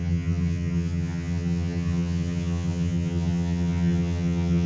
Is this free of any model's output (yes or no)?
no